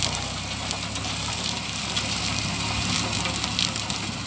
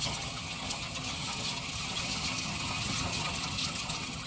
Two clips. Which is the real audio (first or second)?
first